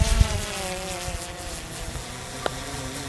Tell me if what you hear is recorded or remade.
recorded